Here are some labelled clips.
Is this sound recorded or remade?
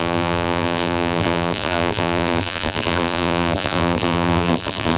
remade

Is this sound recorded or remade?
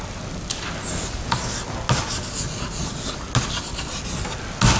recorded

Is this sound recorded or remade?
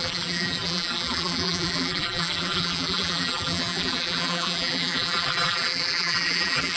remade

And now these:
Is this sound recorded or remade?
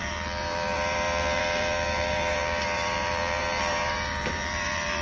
remade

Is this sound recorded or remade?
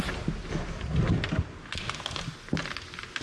recorded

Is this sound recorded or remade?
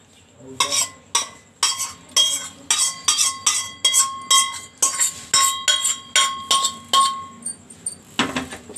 recorded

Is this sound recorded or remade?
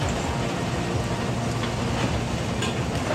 recorded